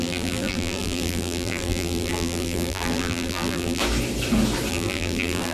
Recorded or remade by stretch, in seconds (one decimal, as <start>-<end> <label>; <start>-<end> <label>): 0.0-3.8 remade; 3.8-4.7 recorded; 4.7-5.5 remade